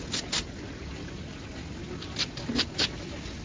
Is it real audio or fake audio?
real